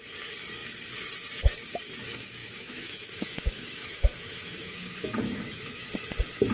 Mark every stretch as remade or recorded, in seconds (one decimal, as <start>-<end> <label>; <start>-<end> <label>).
0.0-2.4 recorded; 2.4-5.9 remade; 5.9-6.5 recorded